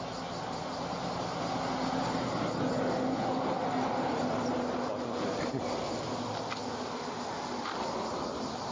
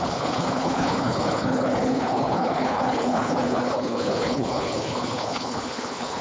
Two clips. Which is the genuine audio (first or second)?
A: first